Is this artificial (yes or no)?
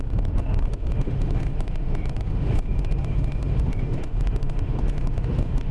yes